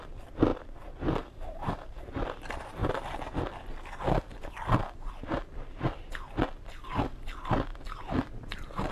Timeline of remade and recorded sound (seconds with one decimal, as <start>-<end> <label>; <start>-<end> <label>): 0.0-0.5 recorded; 0.5-2.0 remade; 2.0-8.9 recorded